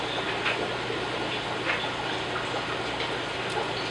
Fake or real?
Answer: real